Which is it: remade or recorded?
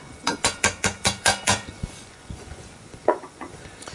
remade